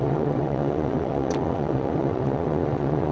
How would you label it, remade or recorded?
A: remade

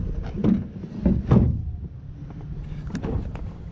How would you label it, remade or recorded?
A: recorded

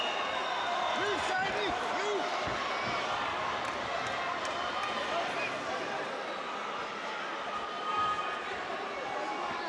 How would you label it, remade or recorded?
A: recorded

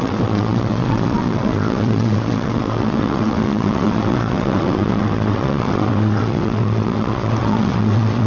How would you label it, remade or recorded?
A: remade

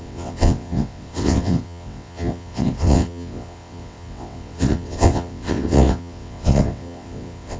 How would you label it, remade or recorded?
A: remade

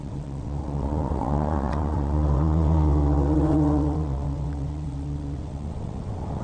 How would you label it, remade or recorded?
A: remade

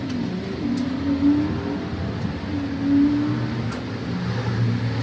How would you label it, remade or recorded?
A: recorded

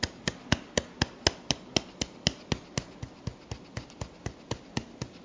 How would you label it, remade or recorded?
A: recorded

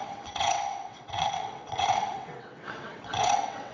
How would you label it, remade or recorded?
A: remade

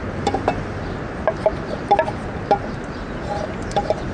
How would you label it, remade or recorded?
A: recorded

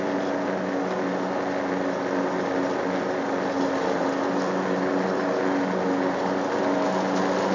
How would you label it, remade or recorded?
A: recorded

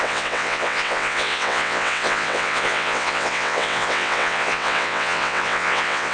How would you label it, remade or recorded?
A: remade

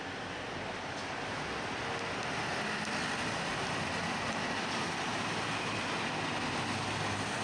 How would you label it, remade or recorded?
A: recorded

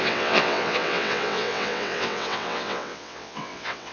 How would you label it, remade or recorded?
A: remade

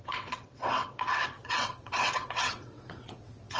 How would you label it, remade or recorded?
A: remade